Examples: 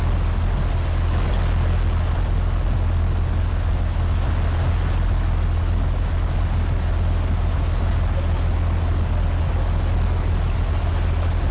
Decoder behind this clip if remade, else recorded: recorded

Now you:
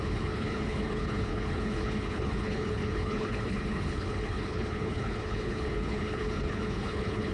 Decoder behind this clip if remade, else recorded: remade, codec, HILCodec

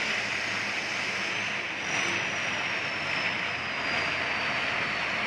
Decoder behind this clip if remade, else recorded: recorded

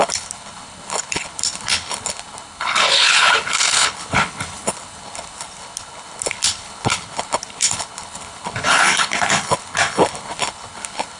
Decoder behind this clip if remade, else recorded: remade, codec, HILCodec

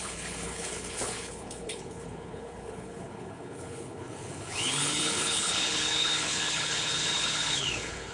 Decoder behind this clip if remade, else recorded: remade, codec, HILCodec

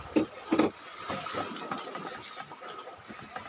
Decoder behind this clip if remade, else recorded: recorded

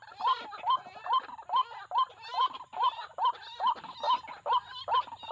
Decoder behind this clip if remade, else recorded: recorded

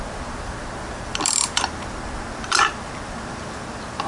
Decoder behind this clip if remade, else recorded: recorded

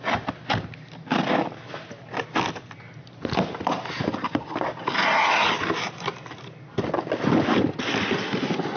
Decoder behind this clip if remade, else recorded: recorded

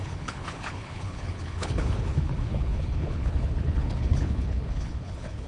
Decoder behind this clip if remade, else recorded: remade, codec, HILCodec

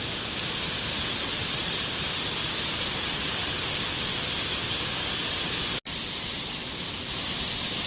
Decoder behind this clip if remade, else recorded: recorded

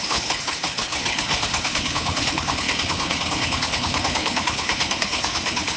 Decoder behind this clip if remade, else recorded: remade, codec, HILCodec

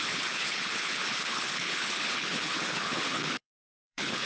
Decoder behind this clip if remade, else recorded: remade, codec, HILCodec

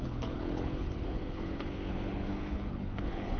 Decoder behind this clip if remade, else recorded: remade, codec, HILCodec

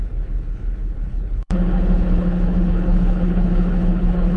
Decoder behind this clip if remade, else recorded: remade, codec, HILCodec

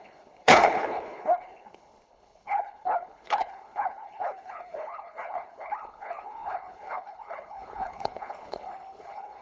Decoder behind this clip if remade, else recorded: remade, codec, HILCodec